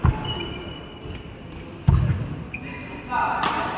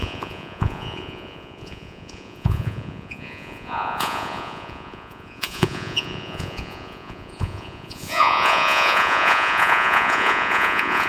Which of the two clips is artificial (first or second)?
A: second